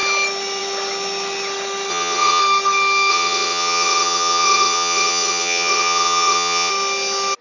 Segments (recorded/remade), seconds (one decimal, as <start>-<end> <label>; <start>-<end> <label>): 0.0-1.9 recorded; 1.9-2.4 remade; 2.4-3.1 recorded; 3.1-6.7 remade; 6.7-7.4 recorded